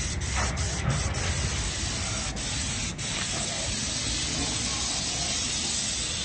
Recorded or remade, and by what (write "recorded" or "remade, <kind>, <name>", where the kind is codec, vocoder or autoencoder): recorded